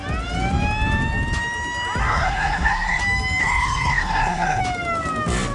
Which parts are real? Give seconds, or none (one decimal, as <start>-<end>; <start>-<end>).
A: 0.0-2.0; 3.0-3.4; 4.6-5.5